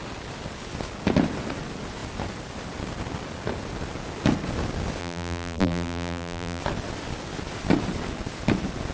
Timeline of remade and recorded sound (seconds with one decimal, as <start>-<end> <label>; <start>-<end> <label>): 0.0-5.0 recorded; 5.0-6.6 remade; 6.6-8.9 recorded